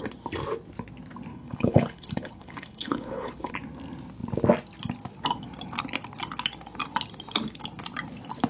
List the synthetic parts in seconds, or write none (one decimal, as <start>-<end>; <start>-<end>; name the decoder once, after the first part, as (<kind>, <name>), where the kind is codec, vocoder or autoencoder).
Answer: 1.3-3.5 (codec, HILCodec)